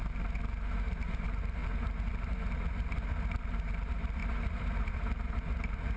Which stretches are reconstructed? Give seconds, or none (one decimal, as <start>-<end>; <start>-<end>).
4.2-4.9